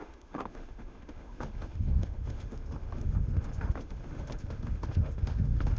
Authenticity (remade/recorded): remade